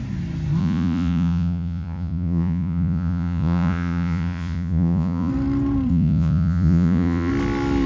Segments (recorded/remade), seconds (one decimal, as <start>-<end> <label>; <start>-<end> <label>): 0.0-0.6 recorded; 0.6-5.3 remade; 5.3-5.9 recorded; 5.9-7.3 remade; 7.3-7.9 recorded